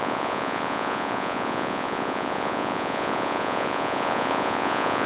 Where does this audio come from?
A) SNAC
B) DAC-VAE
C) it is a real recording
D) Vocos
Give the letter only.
D